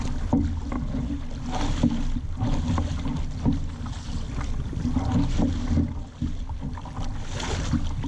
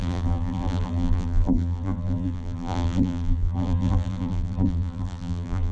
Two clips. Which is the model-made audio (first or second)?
second